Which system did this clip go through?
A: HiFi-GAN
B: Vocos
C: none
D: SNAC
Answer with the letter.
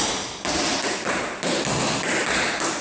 C